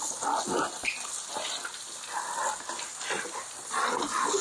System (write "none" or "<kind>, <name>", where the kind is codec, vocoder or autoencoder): none